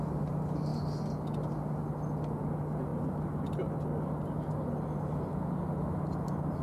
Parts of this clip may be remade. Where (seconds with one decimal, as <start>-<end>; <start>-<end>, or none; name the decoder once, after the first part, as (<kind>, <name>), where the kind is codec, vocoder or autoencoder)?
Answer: none